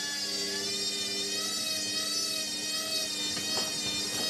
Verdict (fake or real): real